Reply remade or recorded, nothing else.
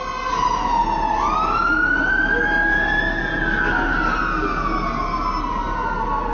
recorded